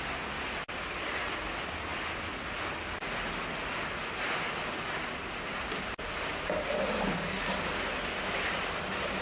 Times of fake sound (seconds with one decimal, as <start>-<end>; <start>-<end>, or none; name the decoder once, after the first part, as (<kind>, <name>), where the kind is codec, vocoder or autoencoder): none